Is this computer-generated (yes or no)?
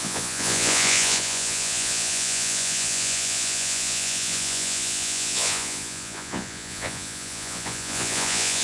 yes